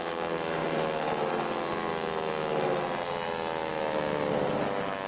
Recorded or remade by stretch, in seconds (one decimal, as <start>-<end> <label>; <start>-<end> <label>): 0.0-5.1 recorded